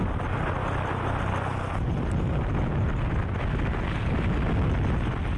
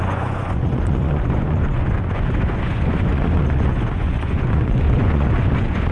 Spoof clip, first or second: second